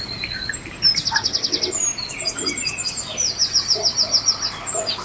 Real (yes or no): yes